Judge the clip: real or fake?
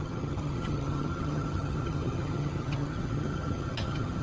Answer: fake